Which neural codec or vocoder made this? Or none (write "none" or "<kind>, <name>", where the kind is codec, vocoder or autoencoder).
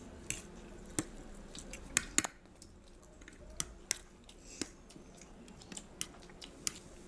none